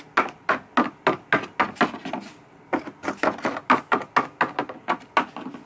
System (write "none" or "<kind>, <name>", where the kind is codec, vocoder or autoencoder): none